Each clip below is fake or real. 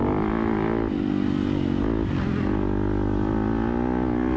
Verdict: real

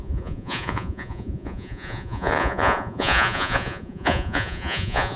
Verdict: fake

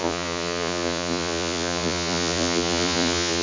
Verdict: fake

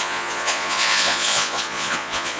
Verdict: fake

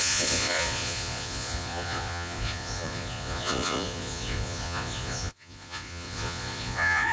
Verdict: fake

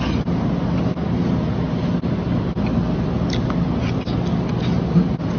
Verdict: real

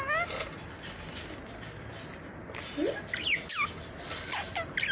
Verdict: real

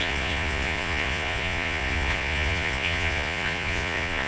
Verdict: fake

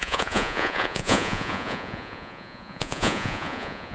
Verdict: fake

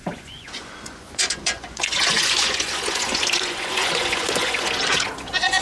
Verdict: fake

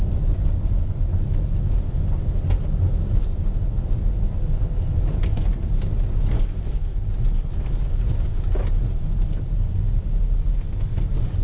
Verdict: real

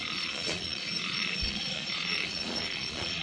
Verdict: fake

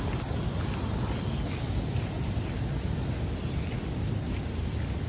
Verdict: real